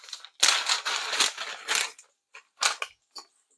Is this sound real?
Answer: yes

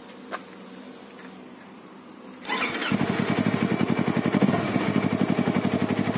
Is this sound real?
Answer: yes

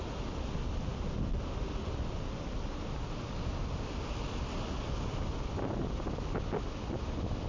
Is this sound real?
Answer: yes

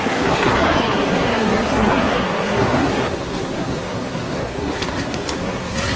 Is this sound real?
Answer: no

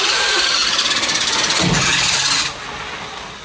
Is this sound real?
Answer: yes